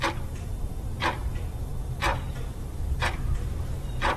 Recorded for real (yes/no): no